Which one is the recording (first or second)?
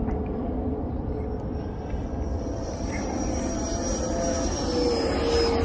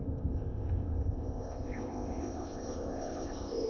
first